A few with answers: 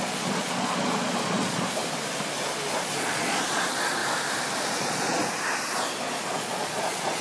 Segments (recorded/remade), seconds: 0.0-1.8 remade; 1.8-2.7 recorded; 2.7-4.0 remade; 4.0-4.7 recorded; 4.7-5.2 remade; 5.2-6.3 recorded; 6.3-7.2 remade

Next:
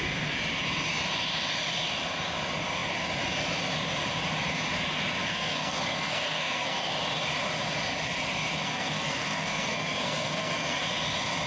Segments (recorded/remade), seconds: 0.0-5.2 recorded; 5.2-6.9 remade; 6.9-8.6 recorded; 8.6-10.8 remade; 10.8-11.5 recorded

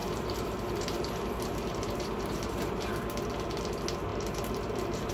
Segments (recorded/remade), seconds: 0.0-2.9 remade; 2.9-4.1 recorded; 4.1-5.1 remade

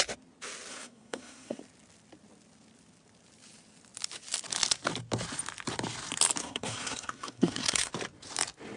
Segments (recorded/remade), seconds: 0.0-0.7 recorded; 0.7-1.6 remade; 1.6-6.4 recorded; 6.4-7.9 remade; 7.9-8.8 recorded